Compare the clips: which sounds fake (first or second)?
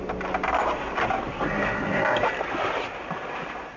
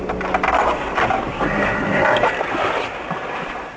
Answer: second